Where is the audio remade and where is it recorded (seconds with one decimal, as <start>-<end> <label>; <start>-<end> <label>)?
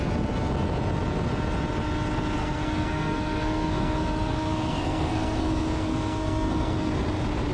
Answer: 0.0-2.4 recorded; 2.4-6.9 remade; 6.9-7.5 recorded